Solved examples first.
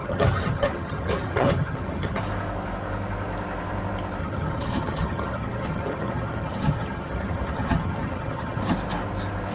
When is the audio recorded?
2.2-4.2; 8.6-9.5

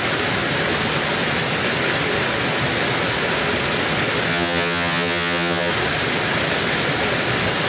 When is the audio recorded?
0.0-4.3; 5.7-7.7

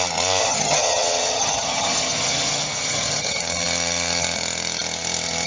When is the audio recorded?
0.0-0.4; 3.4-5.5

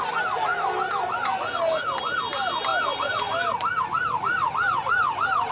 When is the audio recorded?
0.0-5.5

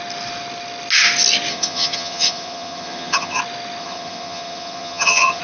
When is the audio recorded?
0.0-1.5; 3.4-3.8

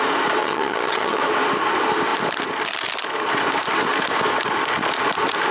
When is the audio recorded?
0.0-0.4; 1.2-5.5

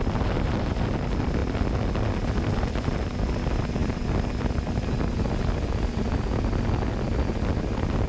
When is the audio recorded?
0.0-8.1